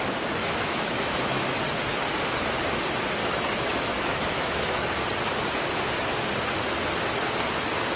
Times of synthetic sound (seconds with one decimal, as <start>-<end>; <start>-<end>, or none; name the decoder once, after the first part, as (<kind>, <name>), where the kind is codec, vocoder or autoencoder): 0.4-1.6 (autoencoder, DAC-VAE); 3.2-5.0